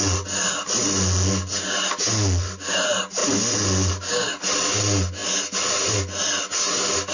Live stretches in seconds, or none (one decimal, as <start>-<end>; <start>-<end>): 0.0-7.1

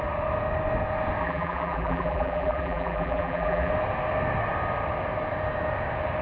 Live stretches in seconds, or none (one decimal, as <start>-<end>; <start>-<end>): 0.0-1.2; 3.7-6.2

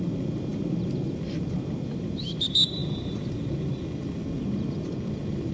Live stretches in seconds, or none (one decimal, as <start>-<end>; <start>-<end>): 2.8-4.8

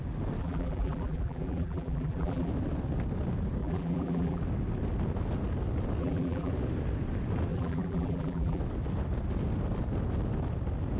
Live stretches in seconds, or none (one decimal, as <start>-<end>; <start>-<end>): 0.0-0.4; 2.5-3.6; 4.4-6.0; 6.5-7.5; 8.6-11.0